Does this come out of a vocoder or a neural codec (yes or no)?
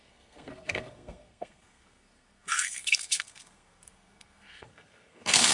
yes